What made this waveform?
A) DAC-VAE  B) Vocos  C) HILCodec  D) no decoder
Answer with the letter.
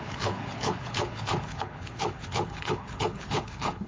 C